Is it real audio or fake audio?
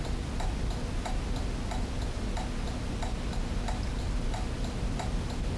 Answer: real